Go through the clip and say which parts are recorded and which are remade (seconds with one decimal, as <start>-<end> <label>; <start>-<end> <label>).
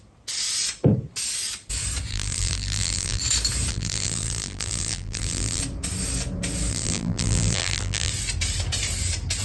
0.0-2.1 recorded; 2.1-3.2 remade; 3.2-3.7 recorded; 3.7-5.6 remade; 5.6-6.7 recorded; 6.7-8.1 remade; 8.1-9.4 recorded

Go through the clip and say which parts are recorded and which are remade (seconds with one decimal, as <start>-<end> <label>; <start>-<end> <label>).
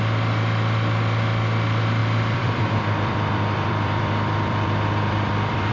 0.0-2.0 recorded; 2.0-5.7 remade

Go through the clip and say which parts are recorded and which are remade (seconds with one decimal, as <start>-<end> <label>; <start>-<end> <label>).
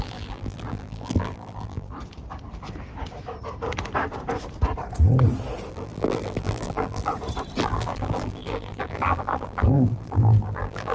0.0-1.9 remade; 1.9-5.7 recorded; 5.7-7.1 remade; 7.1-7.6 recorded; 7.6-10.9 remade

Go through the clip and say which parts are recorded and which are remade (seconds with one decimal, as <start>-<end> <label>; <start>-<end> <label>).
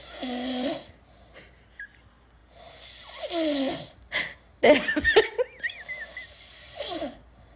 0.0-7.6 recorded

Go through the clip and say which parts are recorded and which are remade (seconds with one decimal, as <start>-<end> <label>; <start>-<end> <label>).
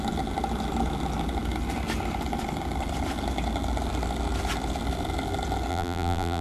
0.0-5.7 recorded; 5.7-6.4 remade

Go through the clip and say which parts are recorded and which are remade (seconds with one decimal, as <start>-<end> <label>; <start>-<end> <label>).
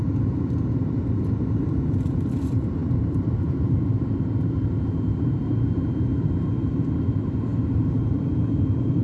0.0-9.0 remade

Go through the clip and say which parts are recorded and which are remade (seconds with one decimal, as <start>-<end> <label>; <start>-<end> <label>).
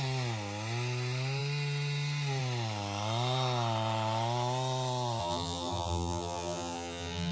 0.0-5.2 recorded; 5.2-7.3 remade